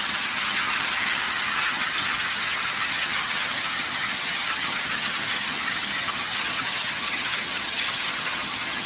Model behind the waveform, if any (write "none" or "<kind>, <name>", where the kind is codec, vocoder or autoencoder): vocoder, HiFi-GAN